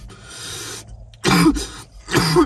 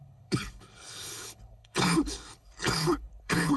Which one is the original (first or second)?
first